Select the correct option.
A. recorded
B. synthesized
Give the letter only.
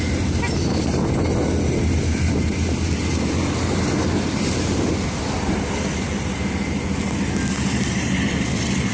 A